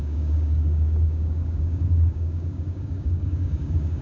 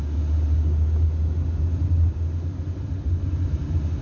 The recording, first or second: second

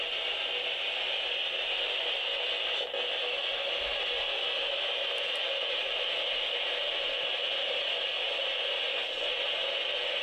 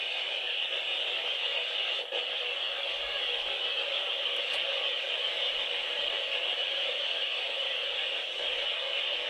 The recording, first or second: first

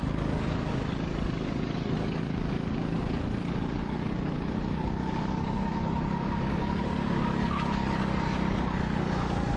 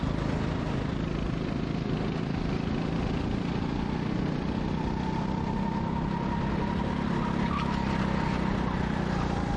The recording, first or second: second